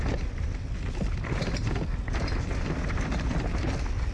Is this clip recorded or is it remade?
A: recorded